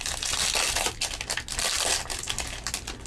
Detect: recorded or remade recorded